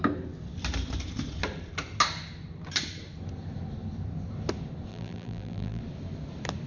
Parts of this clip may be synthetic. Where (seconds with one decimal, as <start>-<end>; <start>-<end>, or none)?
4.9-5.8